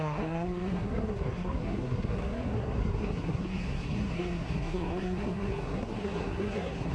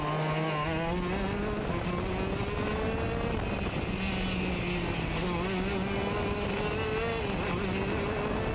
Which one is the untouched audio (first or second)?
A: second